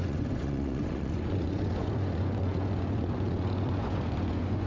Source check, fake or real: fake